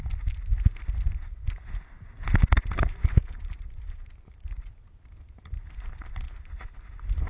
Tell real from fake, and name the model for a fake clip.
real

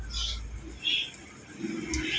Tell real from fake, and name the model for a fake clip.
real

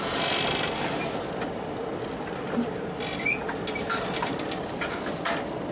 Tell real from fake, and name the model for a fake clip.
real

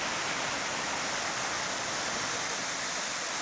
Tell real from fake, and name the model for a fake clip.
real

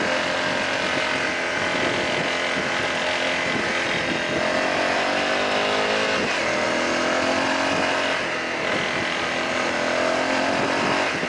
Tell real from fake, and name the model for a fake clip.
real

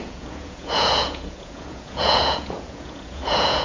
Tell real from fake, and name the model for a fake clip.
fake, vocoder, Vocos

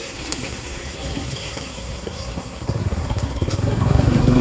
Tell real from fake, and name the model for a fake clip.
fake, codec, SNAC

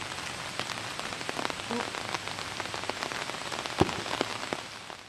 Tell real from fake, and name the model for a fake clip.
real